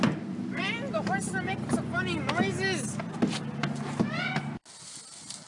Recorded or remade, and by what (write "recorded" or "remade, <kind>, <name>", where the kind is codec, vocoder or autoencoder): recorded